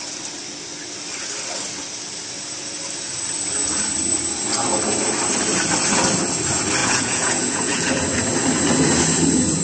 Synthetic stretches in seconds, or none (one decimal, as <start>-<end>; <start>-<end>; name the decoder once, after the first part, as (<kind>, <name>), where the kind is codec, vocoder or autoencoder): 6.8-7.9 (vocoder, Vocos)